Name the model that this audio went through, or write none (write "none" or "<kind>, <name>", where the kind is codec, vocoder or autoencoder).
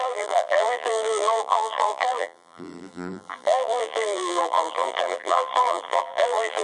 vocoder, BigVGAN v2